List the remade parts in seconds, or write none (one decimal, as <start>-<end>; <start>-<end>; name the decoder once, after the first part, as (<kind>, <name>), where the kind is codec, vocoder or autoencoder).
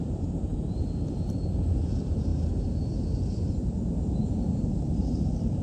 0.0-2.3 (vocoder, BigVGAN v2); 3.4-5.6